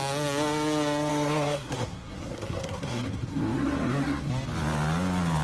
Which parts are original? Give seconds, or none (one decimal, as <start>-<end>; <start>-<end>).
0.0-1.1; 4.3-5.4